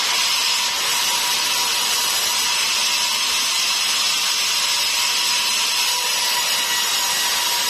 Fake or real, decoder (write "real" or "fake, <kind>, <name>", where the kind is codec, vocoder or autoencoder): real